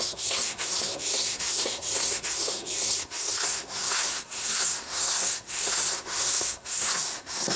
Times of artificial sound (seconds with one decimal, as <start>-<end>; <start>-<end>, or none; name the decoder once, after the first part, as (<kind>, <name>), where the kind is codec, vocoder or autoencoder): 0.0-7.6 (codec, SNAC)